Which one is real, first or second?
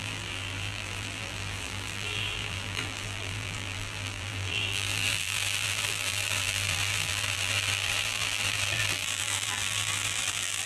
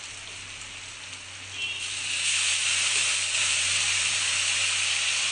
second